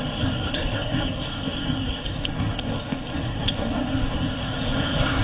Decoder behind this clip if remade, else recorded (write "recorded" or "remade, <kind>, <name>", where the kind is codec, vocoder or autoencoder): remade, codec, SNAC